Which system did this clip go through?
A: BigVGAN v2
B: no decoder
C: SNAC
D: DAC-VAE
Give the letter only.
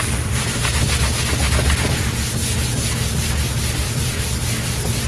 B